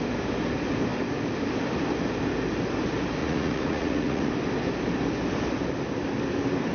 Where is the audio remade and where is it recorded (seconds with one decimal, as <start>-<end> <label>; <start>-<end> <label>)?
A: 0.0-3.2 recorded; 3.2-4.3 remade; 4.3-6.7 recorded